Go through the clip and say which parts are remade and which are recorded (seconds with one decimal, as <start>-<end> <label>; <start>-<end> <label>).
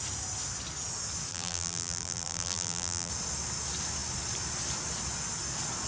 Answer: 0.0-1.3 recorded; 1.3-3.1 remade; 3.1-5.9 recorded